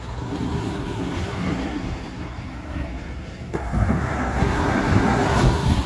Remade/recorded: remade